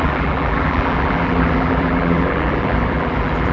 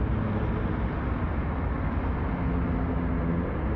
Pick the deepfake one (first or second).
first